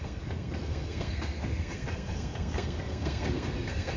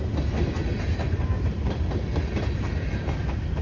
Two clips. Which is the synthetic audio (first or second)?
first